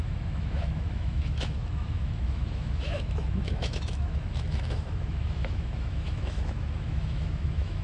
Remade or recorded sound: remade